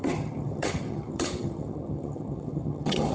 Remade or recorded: remade